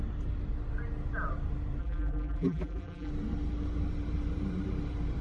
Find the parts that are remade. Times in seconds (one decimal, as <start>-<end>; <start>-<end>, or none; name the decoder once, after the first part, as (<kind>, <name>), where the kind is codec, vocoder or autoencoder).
1.8-3.1 (vocoder, BigVGAN v2)